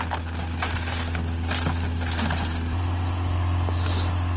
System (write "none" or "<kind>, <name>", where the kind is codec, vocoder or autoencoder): none